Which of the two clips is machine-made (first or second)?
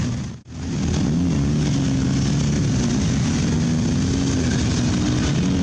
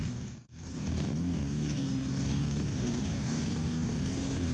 second